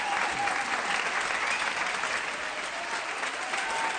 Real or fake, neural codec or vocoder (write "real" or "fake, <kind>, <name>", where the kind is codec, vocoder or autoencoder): real